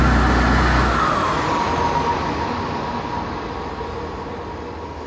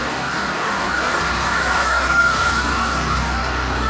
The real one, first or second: first